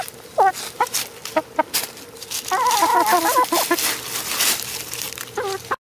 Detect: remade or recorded recorded